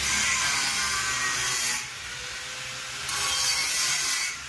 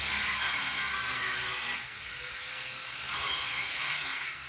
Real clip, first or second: first